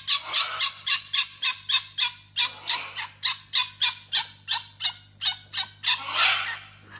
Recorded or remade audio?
recorded